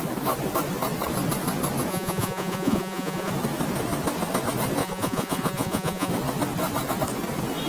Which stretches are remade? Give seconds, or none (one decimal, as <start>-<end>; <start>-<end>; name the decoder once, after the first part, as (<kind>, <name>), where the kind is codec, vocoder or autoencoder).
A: 1.9-3.3 (vocoder, Vocos); 4.8-6.1